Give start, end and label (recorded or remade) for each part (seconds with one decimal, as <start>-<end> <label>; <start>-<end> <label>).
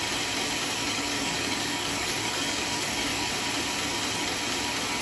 0.0-0.6 recorded; 0.6-3.3 remade; 3.3-5.0 recorded